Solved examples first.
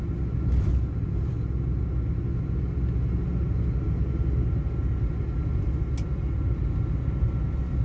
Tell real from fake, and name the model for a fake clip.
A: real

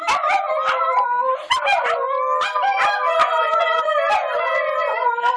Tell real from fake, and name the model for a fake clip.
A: real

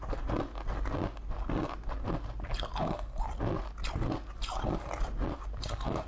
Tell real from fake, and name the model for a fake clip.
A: real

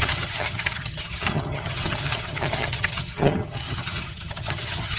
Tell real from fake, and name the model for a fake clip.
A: fake, vocoder, HiFi-GAN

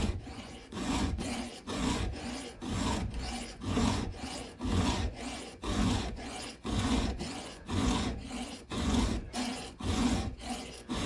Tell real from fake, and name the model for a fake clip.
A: fake, vocoder, Vocos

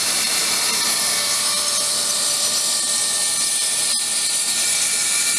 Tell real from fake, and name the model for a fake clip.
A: fake, vocoder, BigVGAN v2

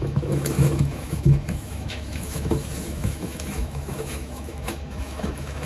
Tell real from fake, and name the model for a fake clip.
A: fake, autoencoder, DAC-VAE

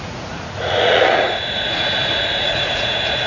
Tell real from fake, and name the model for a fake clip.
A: fake, vocoder, Vocos